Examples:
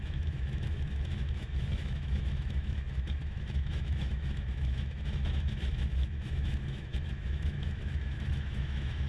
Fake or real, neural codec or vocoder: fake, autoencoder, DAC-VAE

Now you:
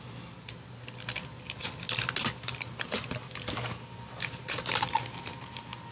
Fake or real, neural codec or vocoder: real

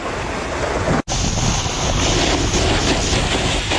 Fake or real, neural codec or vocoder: real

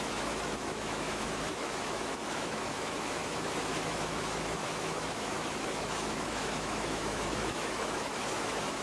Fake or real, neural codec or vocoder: fake, autoencoder, DAC-VAE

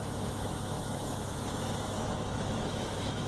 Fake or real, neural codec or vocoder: fake, autoencoder, DAC-VAE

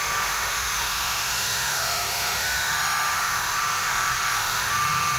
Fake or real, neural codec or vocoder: fake, autoencoder, DAC-VAE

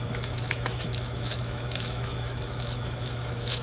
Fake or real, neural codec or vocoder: fake, autoencoder, DAC-VAE